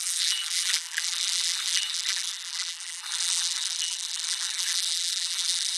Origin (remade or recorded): remade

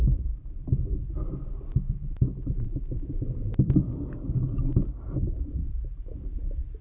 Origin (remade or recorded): remade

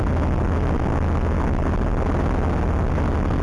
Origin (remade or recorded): recorded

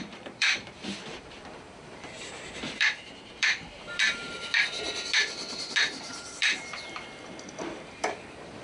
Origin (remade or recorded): remade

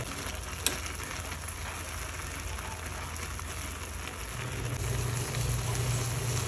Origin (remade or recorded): recorded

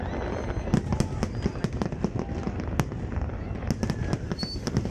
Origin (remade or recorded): recorded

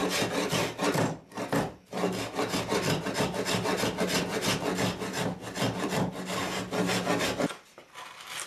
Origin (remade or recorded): recorded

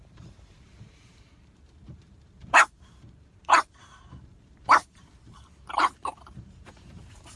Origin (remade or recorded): remade